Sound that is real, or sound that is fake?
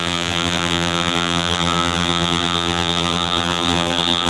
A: fake